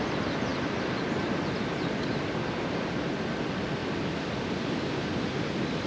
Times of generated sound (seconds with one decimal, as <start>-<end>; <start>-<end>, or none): none